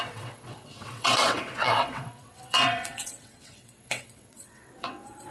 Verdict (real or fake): fake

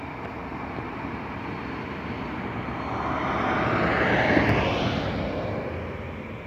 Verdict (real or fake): real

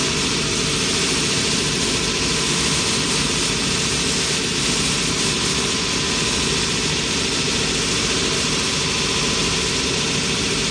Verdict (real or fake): real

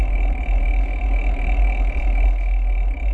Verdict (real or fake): real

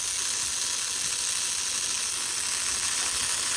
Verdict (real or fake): real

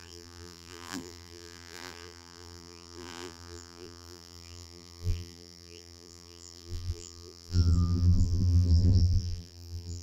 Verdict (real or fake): fake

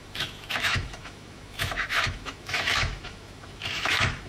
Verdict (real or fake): fake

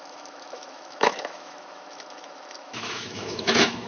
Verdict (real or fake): fake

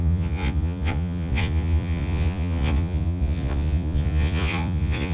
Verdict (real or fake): fake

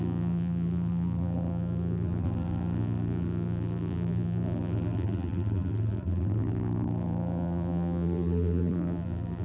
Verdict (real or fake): fake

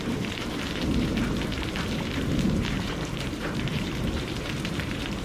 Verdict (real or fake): fake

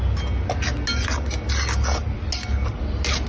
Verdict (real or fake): real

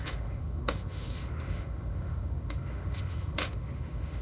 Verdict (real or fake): fake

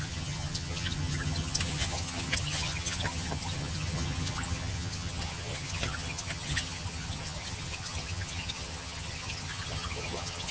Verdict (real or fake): fake